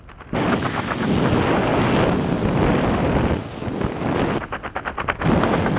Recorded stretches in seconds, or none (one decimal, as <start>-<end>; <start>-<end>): 0.0-5.8